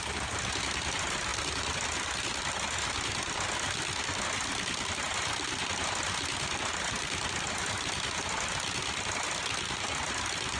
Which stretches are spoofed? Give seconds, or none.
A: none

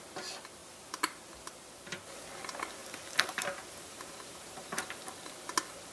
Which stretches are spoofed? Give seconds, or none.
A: 0.6-1.3 (vocoder, BigVGAN v2); 2.8-4.9

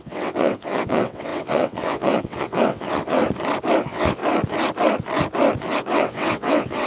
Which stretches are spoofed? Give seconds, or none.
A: 0.0-3.2 (vocoder, WaveNeXt); 3.8-4.2; 5.8-6.9

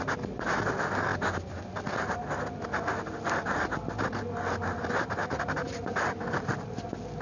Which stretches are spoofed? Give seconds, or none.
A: none

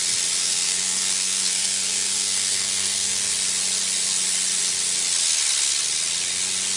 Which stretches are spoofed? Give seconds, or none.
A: 0.4-3.3 (codec, SNAC)

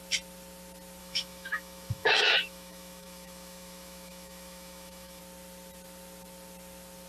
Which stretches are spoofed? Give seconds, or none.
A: 1.0-5.2 (autoencoder, DAC-VAE)